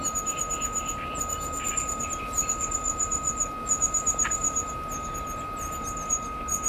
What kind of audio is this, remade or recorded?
recorded